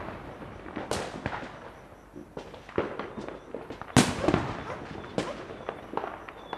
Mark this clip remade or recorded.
recorded